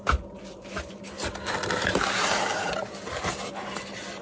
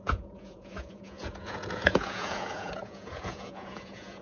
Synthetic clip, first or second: second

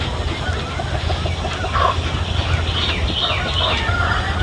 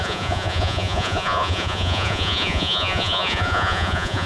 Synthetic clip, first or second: second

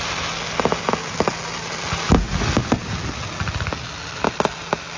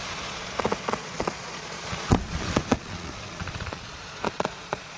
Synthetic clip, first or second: second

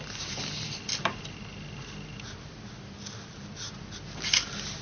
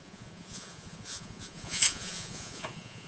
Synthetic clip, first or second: second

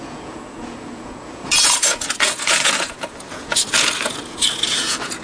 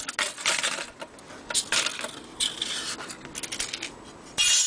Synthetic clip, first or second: first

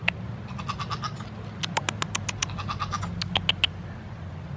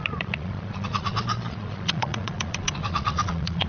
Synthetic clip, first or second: second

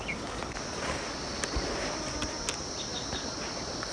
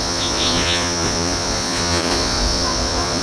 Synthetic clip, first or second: second